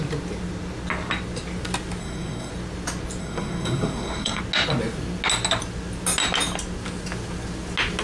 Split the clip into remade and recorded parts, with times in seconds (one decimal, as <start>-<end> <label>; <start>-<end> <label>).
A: 0.0-2.0 recorded; 2.0-2.5 remade; 2.5-3.2 recorded; 3.2-4.4 remade; 4.4-8.0 recorded